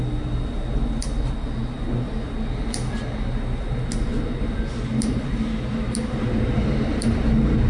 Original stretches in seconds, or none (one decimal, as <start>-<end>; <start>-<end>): 0.0-7.7